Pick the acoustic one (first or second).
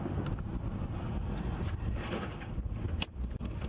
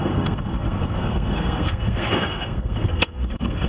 first